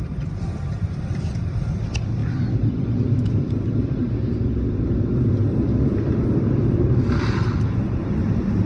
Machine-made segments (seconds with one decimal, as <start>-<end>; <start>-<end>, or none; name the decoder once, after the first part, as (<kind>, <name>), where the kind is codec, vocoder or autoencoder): none